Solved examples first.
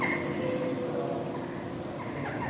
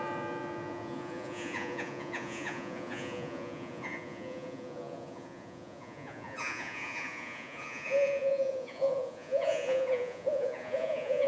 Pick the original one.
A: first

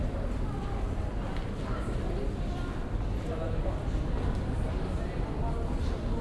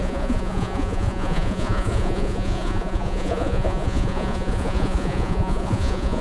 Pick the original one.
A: first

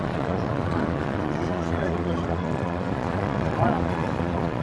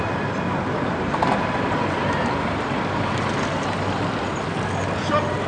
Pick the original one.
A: second